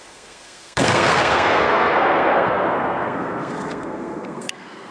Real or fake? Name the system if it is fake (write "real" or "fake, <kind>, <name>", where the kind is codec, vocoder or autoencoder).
fake, codec, SNAC